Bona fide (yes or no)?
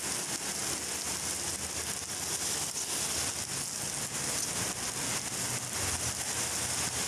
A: yes